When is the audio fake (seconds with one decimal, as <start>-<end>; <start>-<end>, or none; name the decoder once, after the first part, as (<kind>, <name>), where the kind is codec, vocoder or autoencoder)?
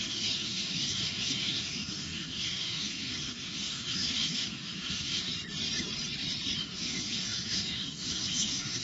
0.0-5.3 (autoencoder, DAC-VAE); 6.6-8.8